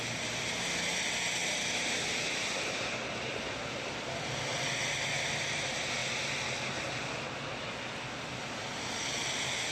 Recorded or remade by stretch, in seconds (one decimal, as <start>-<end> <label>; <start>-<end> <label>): 0.0-9.7 recorded